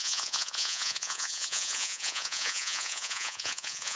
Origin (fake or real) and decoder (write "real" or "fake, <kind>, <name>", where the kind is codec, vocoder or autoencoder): fake, vocoder, Vocos